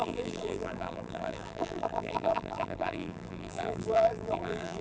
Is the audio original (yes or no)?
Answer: no